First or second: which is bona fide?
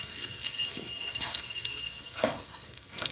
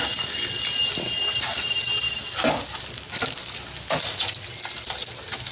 second